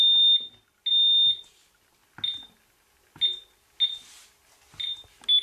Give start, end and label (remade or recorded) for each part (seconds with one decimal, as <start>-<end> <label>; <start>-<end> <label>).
0.0-5.4 recorded